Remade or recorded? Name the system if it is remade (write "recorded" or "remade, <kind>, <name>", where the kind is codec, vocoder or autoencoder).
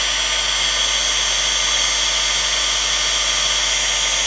recorded